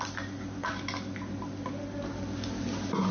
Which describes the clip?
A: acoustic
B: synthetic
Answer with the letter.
A